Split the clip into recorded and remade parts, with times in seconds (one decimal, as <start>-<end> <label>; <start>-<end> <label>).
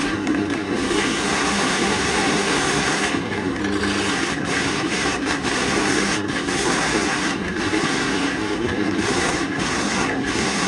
0.0-3.6 remade; 3.6-4.1 recorded; 4.1-10.7 remade